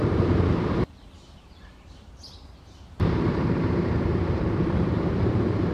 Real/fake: fake